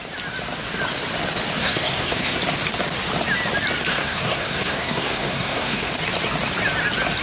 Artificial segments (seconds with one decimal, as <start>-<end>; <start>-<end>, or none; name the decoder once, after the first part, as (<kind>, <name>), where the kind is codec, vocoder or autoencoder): 1.6-2.4 (codec, SNAC); 3.9-5.9